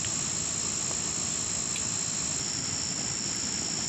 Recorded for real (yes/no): yes